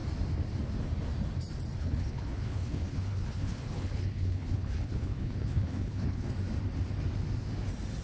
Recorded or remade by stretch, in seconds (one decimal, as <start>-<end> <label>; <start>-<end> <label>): 0.0-1.8 recorded; 1.8-6.3 remade; 6.3-8.0 recorded